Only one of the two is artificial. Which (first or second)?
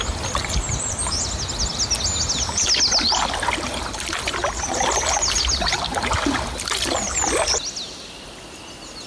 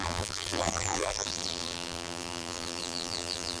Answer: second